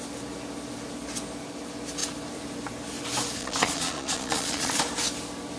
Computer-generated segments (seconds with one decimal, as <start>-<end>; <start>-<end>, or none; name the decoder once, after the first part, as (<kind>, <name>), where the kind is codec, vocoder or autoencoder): 3.4-4.8 (vocoder, Vocos)